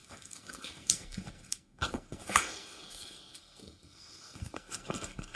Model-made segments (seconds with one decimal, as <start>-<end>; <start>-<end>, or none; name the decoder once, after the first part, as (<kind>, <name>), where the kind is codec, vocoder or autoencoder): 0.0-5.4 (codec, SNAC)